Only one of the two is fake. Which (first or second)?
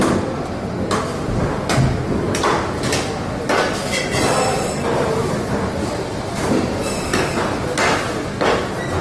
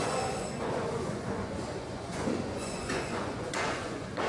second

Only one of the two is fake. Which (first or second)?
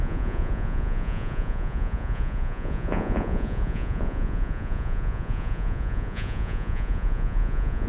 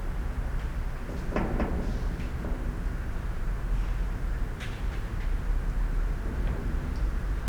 first